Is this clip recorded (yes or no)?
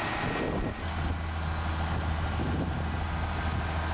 yes